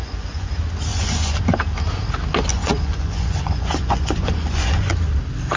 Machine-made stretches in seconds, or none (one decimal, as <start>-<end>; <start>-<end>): 0.0-0.5; 0.9-1.4; 2.5-4.9